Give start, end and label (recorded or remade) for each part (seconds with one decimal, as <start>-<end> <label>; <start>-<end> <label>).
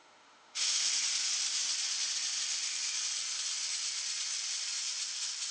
0.0-0.9 remade; 0.9-5.5 recorded